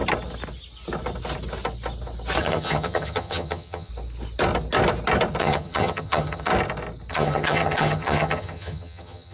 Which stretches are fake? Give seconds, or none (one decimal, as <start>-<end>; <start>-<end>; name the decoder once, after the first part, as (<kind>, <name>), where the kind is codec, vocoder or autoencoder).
2.4-3.9 (vocoder, HiFi-GAN); 5.4-6.5; 7.1-9.3